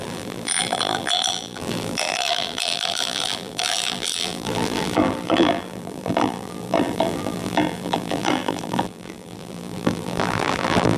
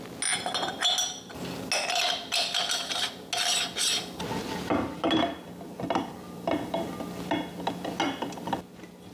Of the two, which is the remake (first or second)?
first